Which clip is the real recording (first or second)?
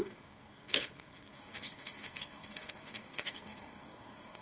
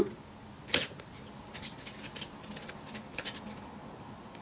second